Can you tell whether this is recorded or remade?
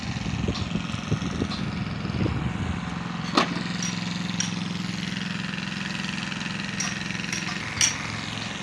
recorded